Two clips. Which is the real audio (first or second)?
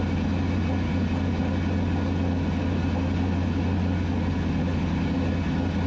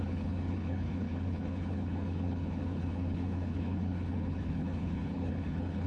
first